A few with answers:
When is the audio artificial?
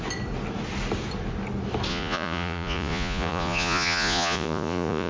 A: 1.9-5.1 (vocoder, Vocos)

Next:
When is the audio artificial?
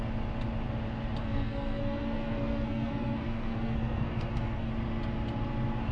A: 1.2-4.7 (codec, SNAC)